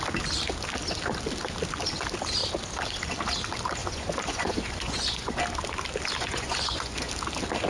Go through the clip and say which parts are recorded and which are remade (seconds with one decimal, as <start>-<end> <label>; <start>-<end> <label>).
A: 0.0-3.8 recorded; 3.8-5.4 remade; 5.4-6.2 recorded; 6.2-7.1 remade; 7.1-7.7 recorded

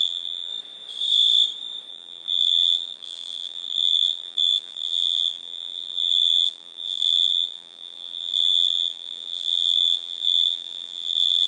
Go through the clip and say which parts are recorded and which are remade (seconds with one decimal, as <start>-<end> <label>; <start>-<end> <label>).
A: 0.0-0.5 remade; 0.5-1.9 recorded; 1.9-11.5 remade

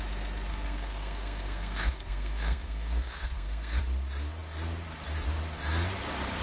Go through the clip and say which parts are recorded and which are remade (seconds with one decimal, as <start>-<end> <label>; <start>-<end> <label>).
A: 0.0-0.5 recorded; 0.5-3.8 remade; 3.8-6.4 recorded

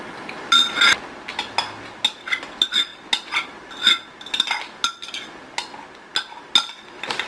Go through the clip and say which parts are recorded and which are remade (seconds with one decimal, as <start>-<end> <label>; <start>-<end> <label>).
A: 0.0-7.3 recorded

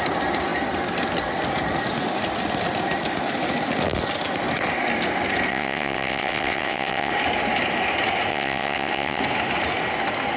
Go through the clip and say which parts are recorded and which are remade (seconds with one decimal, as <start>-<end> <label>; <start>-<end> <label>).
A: 0.0-5.5 recorded; 5.5-7.1 remade; 7.1-8.3 recorded; 8.3-9.2 remade; 9.2-10.4 recorded